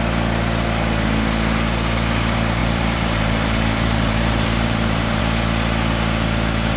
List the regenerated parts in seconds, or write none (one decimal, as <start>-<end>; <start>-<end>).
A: 2.6-5.2